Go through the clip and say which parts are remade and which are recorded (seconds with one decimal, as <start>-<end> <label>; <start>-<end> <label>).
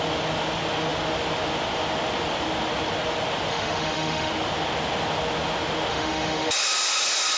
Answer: 0.0-3.5 recorded; 3.5-4.3 remade; 4.3-5.9 recorded; 5.9-6.5 remade; 6.5-7.4 recorded